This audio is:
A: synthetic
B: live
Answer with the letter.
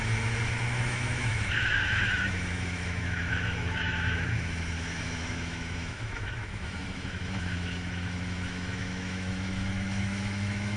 A